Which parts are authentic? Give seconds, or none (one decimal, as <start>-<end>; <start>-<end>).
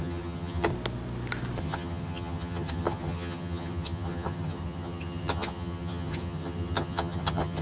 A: 0.7-1.6